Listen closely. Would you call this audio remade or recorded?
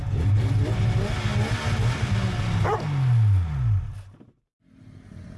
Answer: recorded